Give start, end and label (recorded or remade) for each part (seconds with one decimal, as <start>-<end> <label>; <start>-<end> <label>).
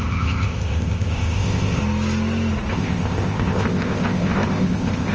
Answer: 0.0-1.8 remade; 1.8-2.7 recorded; 2.7-5.1 remade